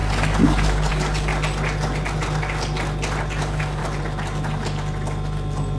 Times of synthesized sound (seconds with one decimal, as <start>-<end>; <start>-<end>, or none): 0.0-1.3; 3.4-3.8